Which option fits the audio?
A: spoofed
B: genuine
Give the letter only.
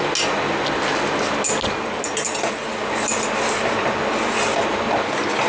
B